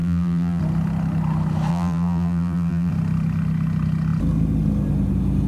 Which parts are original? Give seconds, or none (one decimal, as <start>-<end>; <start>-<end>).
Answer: 0.6-1.7; 2.9-5.5